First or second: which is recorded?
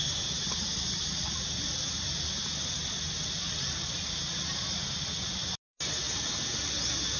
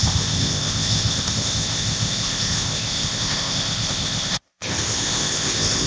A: first